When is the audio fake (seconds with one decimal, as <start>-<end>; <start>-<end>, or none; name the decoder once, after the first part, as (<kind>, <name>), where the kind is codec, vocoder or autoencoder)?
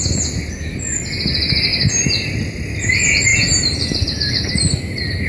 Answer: 3.3-4.5 (vocoder, BigVGAN v2)